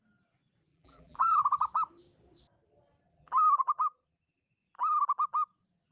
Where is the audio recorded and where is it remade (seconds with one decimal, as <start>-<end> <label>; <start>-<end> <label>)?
0.0-0.7 recorded; 0.7-1.4 remade; 1.4-3.1 recorded; 3.1-4.4 remade; 4.4-5.9 recorded